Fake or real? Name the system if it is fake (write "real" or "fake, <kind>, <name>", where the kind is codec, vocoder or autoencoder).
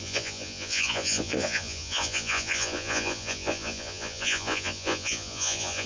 fake, vocoder, Vocos